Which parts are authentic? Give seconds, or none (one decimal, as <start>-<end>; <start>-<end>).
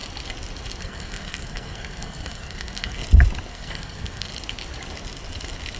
0.0-0.8; 3.0-3.5; 4.3-5.8